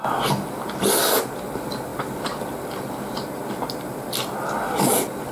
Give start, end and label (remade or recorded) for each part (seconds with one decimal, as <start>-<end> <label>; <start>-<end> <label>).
0.0-5.3 recorded